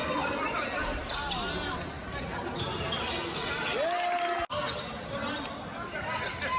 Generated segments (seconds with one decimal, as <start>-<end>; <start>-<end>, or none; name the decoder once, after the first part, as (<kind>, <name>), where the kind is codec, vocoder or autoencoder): none